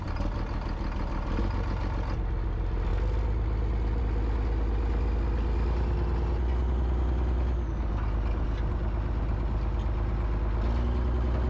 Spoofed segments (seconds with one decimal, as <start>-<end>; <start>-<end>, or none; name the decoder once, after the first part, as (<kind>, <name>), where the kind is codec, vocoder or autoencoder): none